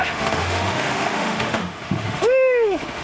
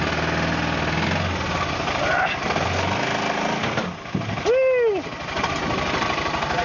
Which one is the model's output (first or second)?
first